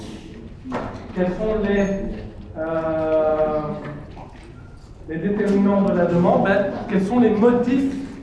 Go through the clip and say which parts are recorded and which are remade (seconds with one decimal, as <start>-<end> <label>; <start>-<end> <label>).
0.0-8.2 recorded